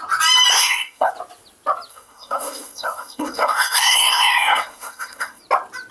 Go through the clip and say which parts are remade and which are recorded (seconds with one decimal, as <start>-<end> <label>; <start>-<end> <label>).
0.0-0.5 recorded; 0.5-1.1 remade; 1.1-1.9 recorded; 1.9-5.4 remade; 5.4-5.9 recorded